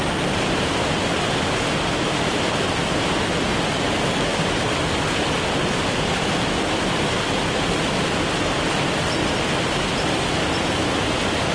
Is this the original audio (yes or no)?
yes